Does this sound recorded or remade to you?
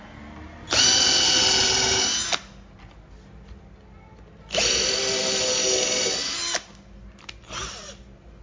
recorded